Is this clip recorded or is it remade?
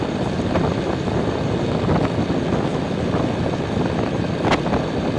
recorded